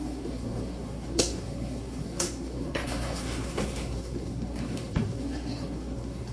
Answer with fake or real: fake